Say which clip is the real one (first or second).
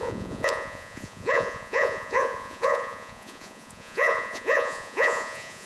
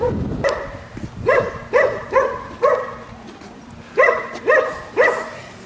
second